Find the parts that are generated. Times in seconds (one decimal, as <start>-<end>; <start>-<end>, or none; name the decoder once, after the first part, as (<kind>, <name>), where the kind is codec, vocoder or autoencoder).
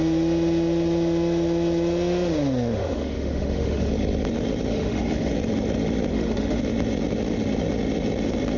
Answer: 2.8-3.9 (autoencoder, DAC-VAE); 4.7-5.3; 6.1-6.6